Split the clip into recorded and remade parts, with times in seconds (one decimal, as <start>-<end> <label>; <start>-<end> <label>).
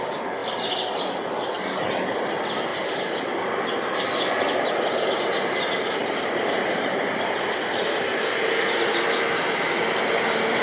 0.0-10.6 recorded